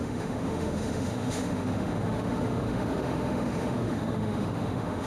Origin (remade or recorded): remade